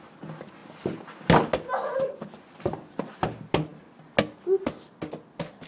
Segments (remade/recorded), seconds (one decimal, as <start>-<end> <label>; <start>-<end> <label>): 0.0-5.7 recorded